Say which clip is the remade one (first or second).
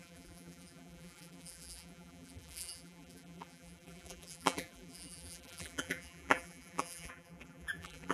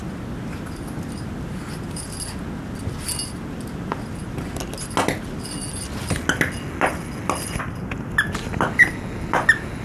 first